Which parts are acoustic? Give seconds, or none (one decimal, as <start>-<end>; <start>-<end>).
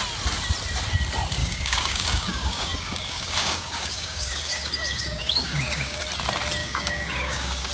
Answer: 0.0-1.4; 6.0-6.6